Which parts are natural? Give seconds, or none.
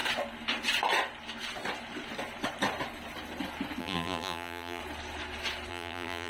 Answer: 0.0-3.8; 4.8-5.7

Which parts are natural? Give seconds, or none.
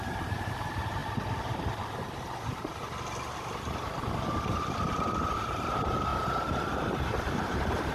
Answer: 1.0-2.2; 2.7-5.2; 6.1-7.1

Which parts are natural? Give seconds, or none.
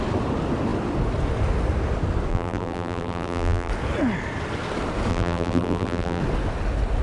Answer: 0.0-2.3; 3.7-5.1; 6.2-7.0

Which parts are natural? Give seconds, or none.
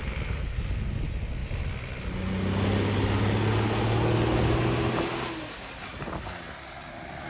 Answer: 0.0-7.3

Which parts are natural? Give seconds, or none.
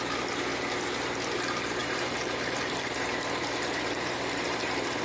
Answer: 0.0-0.5; 1.2-1.8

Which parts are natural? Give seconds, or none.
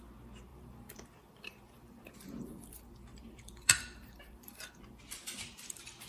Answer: 0.0-0.5; 2.1-3.1; 4.8-6.1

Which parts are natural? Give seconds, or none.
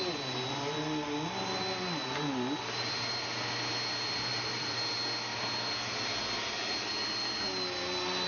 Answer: 0.0-2.0; 3.1-4.3; 4.8-8.3